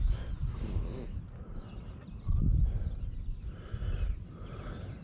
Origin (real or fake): real